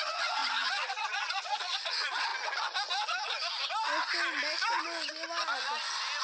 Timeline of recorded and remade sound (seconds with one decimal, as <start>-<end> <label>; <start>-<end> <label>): 0.0-2.3 remade; 2.3-6.2 recorded